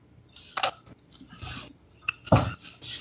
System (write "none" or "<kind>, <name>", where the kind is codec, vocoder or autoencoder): none